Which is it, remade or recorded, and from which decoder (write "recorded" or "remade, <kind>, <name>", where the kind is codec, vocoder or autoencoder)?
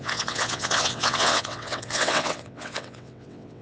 remade, vocoder, WaveNeXt